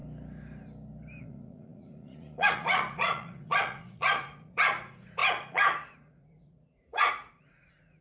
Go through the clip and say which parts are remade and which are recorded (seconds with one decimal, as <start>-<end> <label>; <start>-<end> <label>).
0.0-1.2 recorded; 1.2-8.0 remade